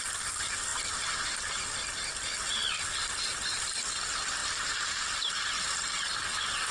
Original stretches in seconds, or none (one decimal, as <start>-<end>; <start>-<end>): 0.0-6.7